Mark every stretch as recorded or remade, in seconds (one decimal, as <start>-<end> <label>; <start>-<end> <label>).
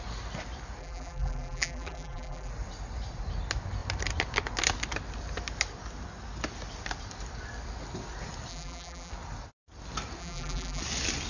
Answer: 0.0-0.8 recorded; 0.8-2.5 remade; 2.5-8.5 recorded; 8.5-9.1 remade; 9.1-10.2 recorded; 10.2-10.8 remade; 10.8-11.3 recorded